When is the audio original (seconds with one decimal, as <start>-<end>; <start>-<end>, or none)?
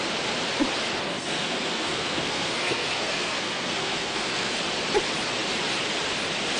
0.0-1.1; 4.6-6.6